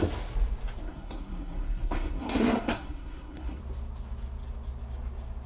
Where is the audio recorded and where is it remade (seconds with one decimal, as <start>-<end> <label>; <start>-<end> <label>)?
0.0-0.8 recorded; 0.8-3.6 remade; 3.6-5.5 recorded